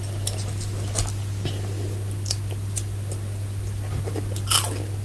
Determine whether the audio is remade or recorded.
recorded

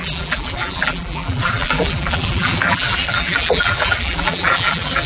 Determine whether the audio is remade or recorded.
remade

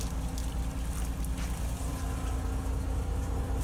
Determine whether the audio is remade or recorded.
recorded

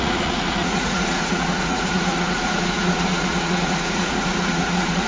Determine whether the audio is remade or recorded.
remade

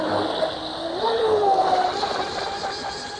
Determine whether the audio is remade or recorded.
recorded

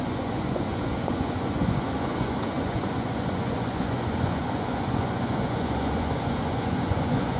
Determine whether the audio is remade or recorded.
remade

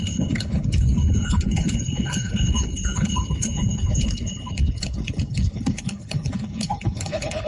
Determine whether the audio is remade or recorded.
remade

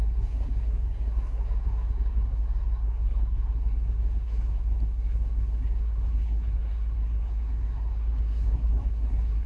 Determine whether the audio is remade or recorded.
remade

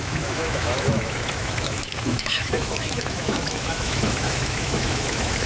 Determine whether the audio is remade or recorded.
remade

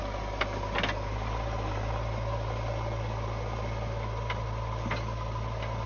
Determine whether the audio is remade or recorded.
recorded